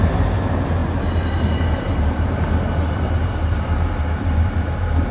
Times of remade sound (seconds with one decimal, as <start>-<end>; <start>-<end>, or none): 0.8-2.3; 3.2-4.0